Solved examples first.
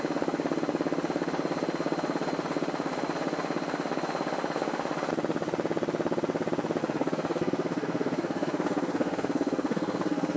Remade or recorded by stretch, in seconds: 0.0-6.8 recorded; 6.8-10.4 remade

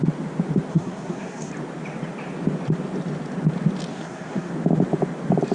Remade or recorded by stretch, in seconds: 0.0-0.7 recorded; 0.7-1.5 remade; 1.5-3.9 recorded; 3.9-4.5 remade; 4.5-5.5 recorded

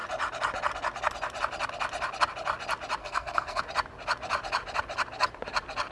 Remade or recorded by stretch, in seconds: 0.0-3.0 recorded; 3.0-3.6 remade; 3.6-5.9 recorded

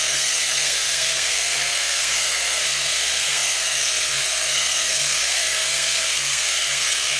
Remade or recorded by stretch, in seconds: 0.0-7.2 remade

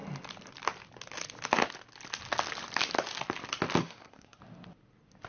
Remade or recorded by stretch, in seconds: 0.0-3.8 recorded; 3.8-4.4 remade; 4.4-5.3 recorded